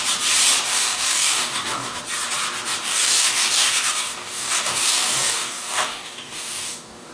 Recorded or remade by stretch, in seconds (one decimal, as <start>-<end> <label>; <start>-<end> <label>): 0.0-0.7 recorded; 0.7-2.0 remade; 2.0-2.8 recorded; 2.8-7.1 remade